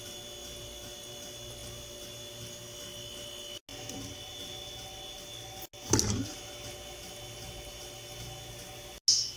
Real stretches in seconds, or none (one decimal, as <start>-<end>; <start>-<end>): 0.0-9.4